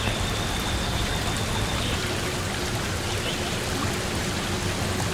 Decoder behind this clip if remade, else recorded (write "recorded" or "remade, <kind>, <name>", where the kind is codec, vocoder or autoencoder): recorded